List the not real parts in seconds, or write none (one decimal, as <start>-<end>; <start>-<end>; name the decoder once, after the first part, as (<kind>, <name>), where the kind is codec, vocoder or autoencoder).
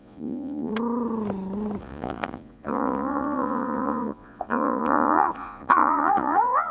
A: 0.0-0.7 (vocoder, Vocos); 1.8-6.7